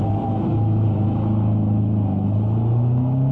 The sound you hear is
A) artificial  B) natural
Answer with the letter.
A